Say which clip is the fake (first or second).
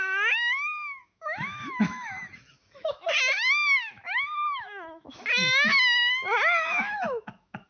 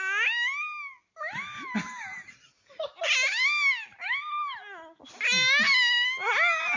first